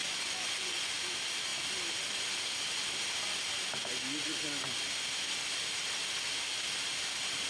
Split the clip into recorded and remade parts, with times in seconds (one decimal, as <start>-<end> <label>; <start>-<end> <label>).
0.0-0.9 remade; 0.9-7.5 recorded